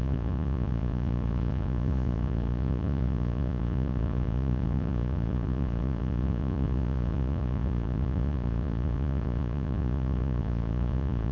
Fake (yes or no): yes